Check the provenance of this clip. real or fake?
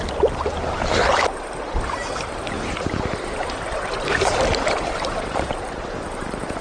fake